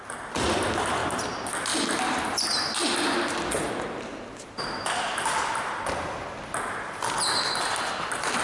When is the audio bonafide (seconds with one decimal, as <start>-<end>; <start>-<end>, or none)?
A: 0.0-8.4